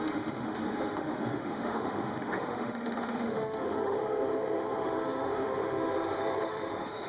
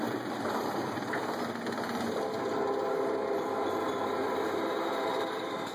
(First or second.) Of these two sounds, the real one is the second